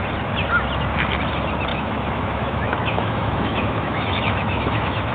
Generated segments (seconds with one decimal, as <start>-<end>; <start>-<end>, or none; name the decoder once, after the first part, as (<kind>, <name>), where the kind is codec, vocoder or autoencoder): 1.7-5.1 (autoencoder, DAC-VAE)

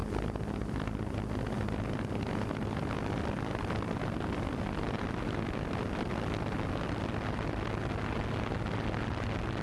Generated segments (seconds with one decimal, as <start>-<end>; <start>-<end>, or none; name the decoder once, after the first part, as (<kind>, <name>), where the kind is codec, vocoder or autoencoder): none

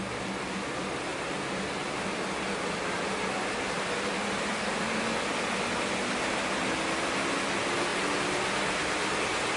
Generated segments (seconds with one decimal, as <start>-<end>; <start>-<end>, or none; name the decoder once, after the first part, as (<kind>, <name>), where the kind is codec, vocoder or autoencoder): none